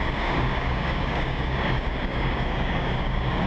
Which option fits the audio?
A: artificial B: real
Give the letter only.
A